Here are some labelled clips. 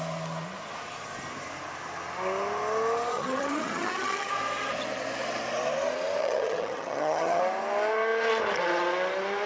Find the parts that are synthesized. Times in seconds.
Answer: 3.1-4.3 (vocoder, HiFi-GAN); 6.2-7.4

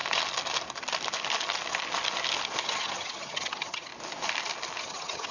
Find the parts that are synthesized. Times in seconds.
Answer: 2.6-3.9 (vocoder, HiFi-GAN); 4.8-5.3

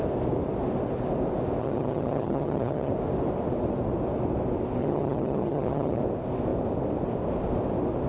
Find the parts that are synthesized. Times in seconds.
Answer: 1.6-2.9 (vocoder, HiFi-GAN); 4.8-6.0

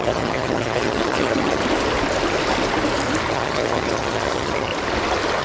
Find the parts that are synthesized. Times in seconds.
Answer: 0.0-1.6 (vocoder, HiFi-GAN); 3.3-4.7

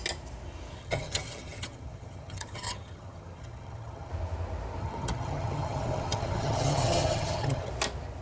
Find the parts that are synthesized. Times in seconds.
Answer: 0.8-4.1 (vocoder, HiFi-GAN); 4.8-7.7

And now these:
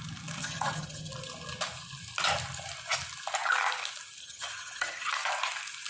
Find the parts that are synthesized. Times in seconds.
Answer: 0.4-1.1 (vocoder, HiFi-GAN); 4.2-5.1